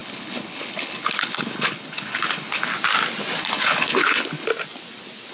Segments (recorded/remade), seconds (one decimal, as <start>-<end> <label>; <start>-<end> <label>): 0.0-2.7 remade; 2.7-3.4 recorded; 3.4-4.5 remade; 4.5-5.3 recorded